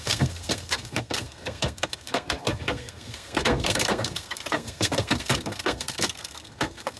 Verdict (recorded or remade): remade